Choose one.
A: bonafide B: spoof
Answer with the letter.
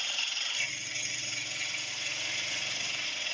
B